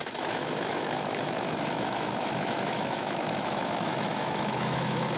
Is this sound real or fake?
fake